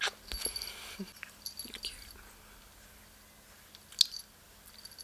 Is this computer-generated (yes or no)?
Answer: no